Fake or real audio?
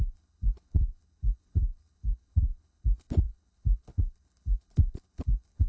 fake